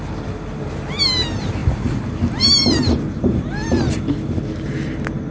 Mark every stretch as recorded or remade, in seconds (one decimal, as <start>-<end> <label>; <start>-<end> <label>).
0.0-1.6 recorded; 1.6-4.0 remade; 4.0-5.3 recorded